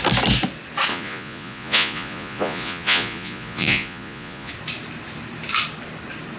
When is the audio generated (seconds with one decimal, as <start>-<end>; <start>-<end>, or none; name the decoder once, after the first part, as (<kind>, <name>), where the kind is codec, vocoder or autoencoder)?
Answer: 0.9-4.5 (vocoder, Vocos)